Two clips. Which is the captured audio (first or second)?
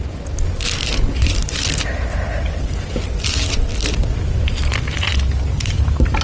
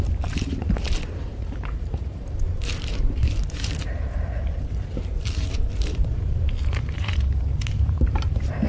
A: first